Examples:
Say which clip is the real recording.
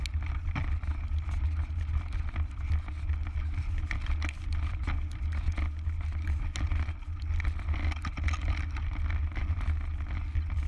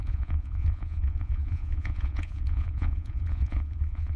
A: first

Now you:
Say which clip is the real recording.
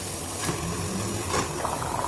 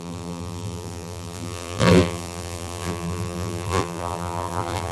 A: first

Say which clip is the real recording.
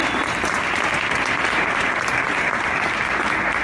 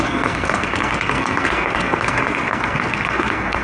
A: first